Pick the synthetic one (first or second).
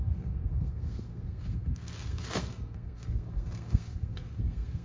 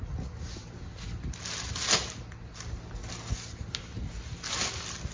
first